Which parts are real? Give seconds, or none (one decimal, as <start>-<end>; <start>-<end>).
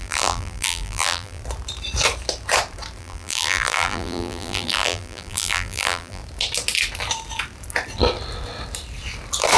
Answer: 1.4-3.0; 6.2-9.6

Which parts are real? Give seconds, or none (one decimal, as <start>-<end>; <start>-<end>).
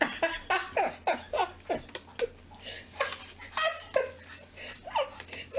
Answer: 0.0-5.6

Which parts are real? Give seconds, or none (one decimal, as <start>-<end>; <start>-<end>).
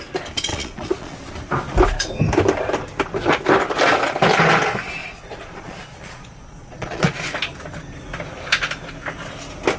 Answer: 0.0-0.5; 1.3-5.0; 7.1-9.8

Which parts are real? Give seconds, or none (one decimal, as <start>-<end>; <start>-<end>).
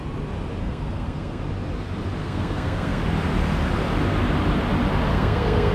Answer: 0.0-0.6; 1.4-2.2; 3.0-5.1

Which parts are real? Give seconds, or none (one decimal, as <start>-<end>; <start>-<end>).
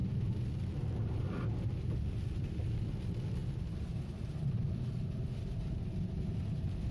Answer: 0.0-3.4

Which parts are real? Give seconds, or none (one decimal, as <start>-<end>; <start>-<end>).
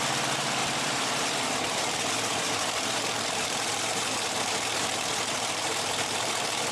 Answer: none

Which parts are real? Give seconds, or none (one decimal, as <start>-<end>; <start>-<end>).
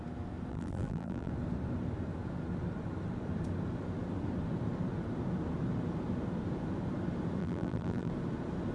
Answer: 0.0-0.5; 1.3-7.4; 8.1-8.7